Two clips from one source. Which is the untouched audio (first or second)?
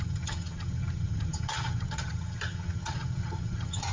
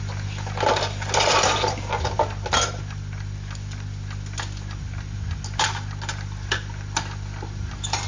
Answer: second